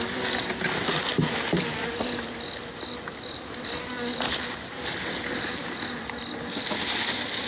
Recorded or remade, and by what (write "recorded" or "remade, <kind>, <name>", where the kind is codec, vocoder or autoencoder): recorded